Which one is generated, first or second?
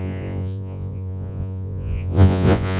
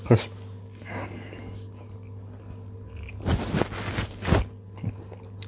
first